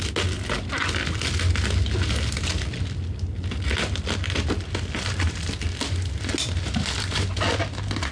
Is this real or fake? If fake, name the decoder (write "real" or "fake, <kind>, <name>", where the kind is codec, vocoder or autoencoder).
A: real